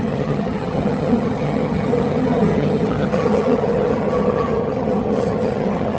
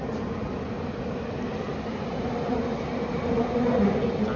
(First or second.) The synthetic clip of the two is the first